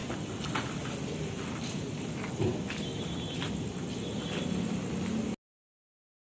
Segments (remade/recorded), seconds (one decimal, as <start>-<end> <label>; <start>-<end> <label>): 0.0-6.4 recorded